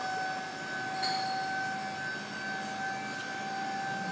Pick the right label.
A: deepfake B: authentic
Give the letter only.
B